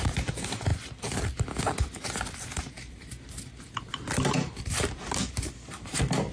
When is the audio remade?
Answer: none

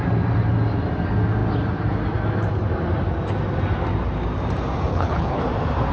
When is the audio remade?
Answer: 4.9-5.4

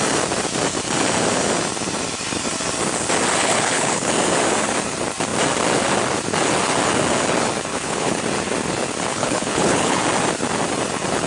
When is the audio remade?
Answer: 3.4-4.1; 7.7-8.2; 9.1-10.0

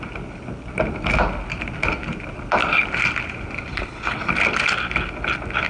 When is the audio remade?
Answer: 3.7-4.3

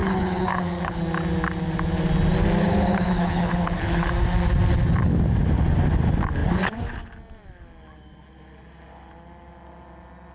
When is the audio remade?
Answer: 0.0-1.0; 2.6-4.1

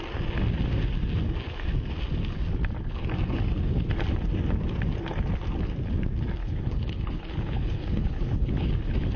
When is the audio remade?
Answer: 6.4-8.5

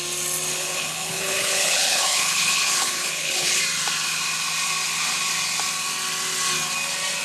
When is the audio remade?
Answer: 0.5-3.6

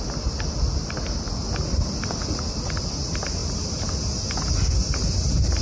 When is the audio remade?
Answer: none